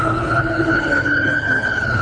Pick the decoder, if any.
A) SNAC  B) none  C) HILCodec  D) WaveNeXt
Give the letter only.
C